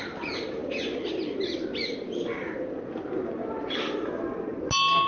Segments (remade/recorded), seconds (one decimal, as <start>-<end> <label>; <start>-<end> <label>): 0.0-5.1 recorded